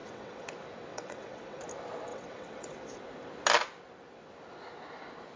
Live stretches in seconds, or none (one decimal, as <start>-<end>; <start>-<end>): 0.5-0.9; 1.6-2.1; 2.9-5.4